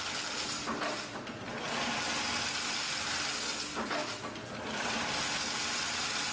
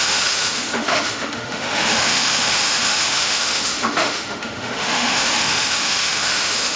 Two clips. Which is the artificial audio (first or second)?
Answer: second